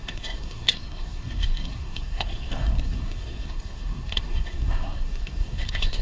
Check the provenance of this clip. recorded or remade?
remade